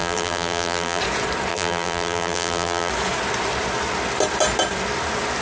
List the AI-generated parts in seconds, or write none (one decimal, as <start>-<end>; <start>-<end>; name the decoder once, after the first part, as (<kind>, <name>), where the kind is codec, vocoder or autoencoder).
0.0-1.0 (vocoder, BigVGAN v2); 1.5-2.9